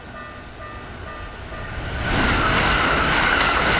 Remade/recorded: recorded